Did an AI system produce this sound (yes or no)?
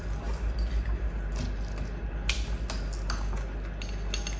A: no